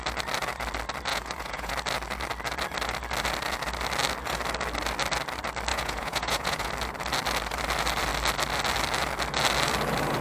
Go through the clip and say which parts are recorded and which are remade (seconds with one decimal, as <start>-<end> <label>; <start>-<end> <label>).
0.0-1.1 recorded; 1.1-1.7 remade; 1.7-5.7 recorded; 5.7-6.7 remade; 6.7-10.2 recorded